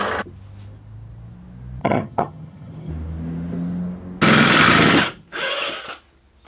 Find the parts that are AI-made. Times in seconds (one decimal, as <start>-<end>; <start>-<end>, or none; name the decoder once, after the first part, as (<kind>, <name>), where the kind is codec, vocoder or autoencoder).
1.8-2.9 (vocoder, HiFi-GAN)